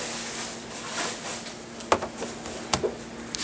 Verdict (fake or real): real